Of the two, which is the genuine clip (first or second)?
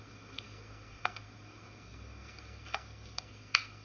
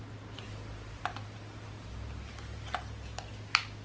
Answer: second